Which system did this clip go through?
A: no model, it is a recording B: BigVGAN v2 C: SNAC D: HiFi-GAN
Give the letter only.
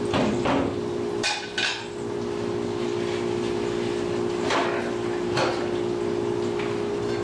A